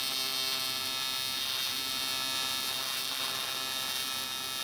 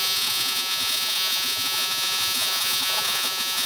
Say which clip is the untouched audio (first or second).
first